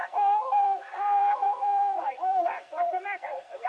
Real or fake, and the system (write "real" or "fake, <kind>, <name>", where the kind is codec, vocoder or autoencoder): fake, codec, SNAC